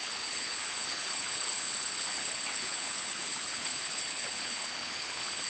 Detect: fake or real fake